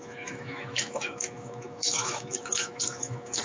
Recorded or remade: remade